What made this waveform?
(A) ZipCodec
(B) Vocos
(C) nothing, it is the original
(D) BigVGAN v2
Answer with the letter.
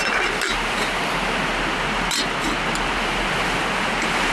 C